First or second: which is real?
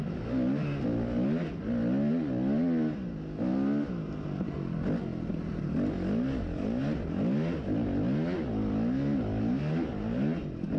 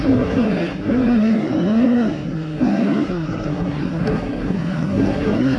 first